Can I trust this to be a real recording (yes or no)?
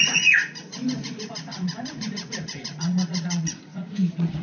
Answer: no